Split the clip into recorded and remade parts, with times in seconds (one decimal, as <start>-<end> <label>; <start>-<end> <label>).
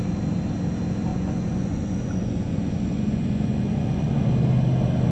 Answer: 0.0-1.1 recorded; 1.1-4.2 remade; 4.2-5.1 recorded